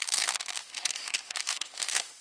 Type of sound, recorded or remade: remade